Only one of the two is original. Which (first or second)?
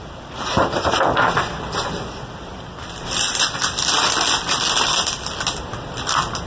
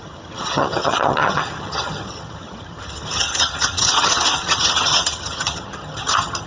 first